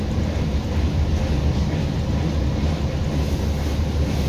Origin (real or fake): real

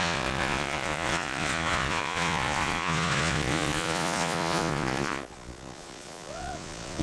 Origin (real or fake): fake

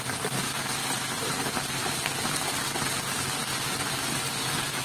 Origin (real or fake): real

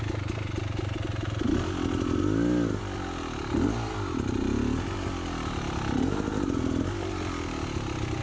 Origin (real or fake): real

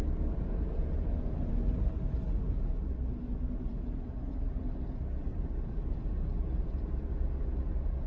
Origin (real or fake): real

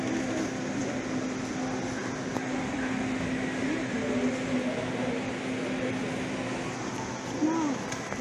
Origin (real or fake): real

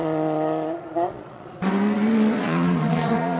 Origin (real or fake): fake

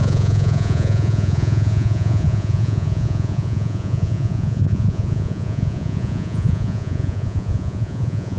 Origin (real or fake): fake